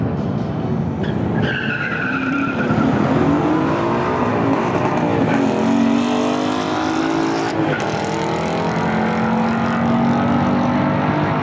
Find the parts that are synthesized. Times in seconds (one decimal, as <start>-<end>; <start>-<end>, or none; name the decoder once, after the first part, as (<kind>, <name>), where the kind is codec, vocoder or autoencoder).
2.1-4.3 (vocoder, BigVGAN v2)